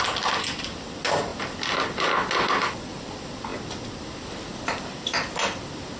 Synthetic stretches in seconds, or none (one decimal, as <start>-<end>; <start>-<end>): none